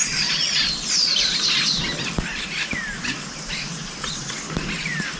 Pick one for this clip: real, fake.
real